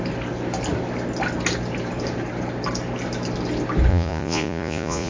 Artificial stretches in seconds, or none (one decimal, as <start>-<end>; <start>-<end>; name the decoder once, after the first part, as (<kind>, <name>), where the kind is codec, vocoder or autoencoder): 3.9-5.1 (vocoder, Vocos)